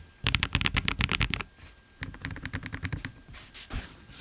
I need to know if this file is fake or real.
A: real